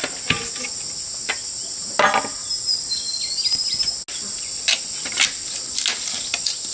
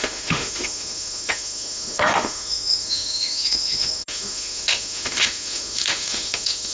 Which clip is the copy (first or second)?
second